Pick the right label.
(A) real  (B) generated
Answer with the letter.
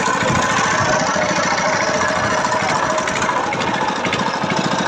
A